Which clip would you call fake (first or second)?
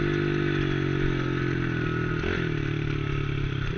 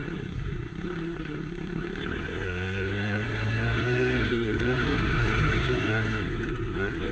second